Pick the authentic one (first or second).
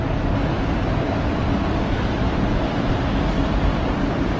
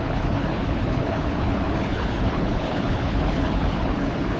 first